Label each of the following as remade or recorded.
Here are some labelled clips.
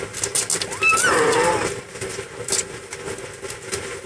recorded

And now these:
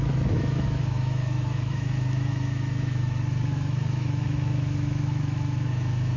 remade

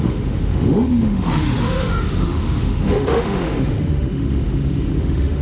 remade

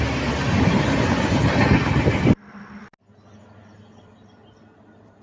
recorded